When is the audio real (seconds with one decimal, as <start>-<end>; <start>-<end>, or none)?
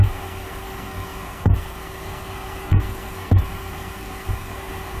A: none